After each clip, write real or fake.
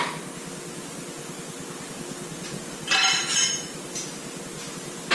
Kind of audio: real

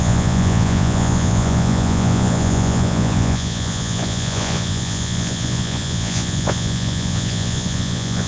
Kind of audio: fake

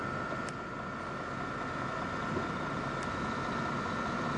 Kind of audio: real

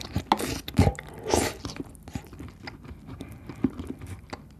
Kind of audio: real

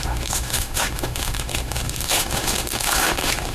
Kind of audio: fake